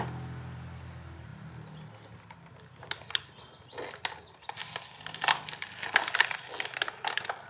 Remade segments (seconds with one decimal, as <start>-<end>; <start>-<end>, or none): none